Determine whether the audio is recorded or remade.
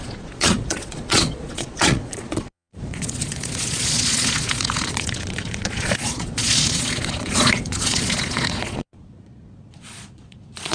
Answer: remade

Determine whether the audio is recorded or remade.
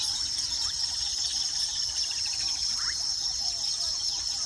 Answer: recorded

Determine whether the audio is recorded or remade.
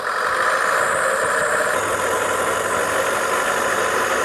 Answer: recorded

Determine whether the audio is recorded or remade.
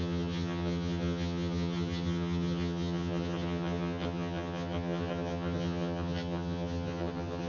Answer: remade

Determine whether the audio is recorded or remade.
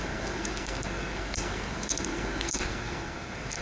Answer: remade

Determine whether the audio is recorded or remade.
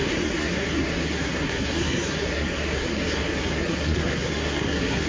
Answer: remade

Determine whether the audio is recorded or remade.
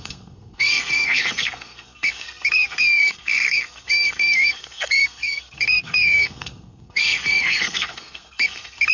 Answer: remade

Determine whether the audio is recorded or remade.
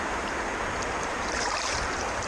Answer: remade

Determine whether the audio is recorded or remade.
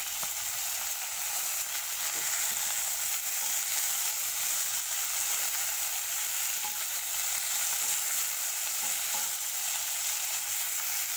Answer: recorded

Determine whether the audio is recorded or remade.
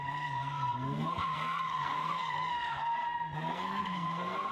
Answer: remade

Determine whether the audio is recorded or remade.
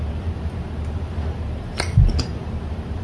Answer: recorded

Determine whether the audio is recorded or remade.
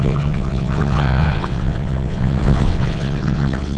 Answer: remade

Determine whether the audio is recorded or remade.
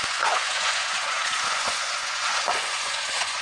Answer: remade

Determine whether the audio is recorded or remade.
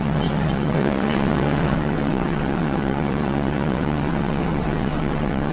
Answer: remade